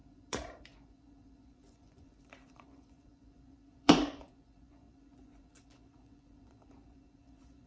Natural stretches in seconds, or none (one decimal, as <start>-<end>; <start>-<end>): none